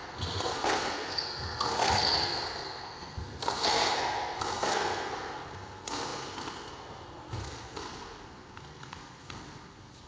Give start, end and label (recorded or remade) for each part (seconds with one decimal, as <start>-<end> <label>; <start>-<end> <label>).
0.0-10.1 remade